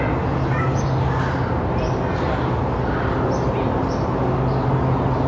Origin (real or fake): real